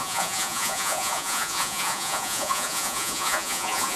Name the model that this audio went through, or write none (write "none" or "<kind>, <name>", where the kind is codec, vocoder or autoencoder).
vocoder, Vocos